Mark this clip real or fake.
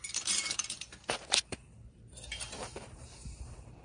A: fake